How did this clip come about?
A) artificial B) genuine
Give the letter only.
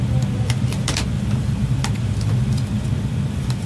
B